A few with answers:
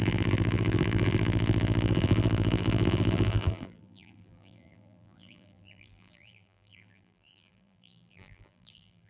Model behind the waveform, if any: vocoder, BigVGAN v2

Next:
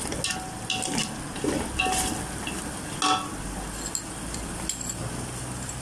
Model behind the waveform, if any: none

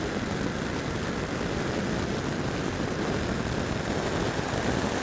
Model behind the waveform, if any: none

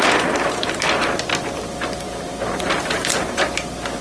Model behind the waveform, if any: vocoder, BigVGAN v2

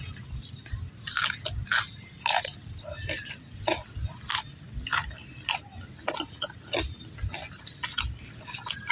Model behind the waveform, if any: none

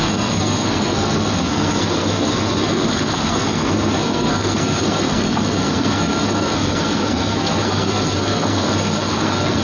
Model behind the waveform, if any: codec, SNAC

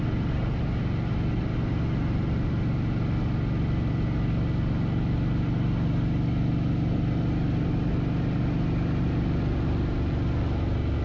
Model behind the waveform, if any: none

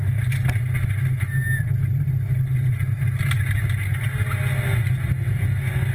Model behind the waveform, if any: none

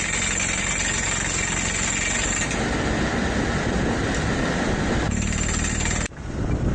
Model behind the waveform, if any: none